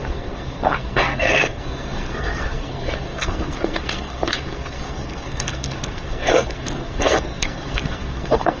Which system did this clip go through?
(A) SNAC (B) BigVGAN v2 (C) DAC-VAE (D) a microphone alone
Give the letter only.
A